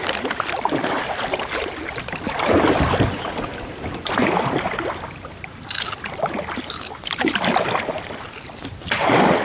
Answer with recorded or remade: remade